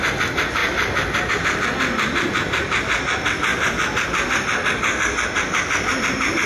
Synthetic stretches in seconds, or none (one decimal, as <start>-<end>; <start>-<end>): none